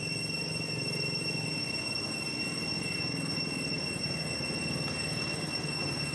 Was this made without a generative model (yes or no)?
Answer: yes